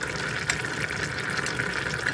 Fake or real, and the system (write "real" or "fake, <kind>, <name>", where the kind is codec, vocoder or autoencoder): real